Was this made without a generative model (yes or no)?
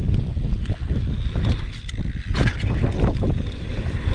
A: no